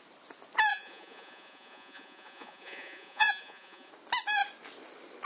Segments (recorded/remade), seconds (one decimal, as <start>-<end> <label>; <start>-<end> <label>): 0.0-0.7 recorded; 0.7-3.9 remade; 3.9-5.3 recorded